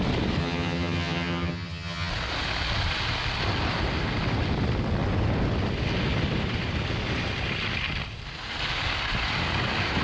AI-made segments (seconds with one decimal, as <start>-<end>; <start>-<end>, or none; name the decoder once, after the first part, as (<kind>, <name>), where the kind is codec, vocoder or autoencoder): 0.4-2.1 (vocoder, HiFi-GAN)